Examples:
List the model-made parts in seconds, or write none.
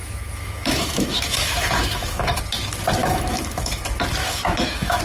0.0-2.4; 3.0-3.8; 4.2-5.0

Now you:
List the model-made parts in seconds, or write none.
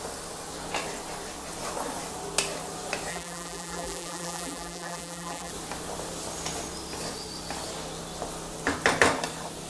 3.1-5.5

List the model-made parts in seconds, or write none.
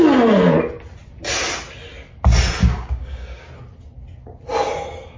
2.6-3.5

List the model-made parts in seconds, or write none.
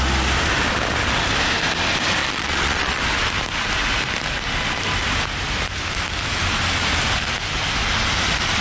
2.2-3.0